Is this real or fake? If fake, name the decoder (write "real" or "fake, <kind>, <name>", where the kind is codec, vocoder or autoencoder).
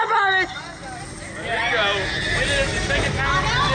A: real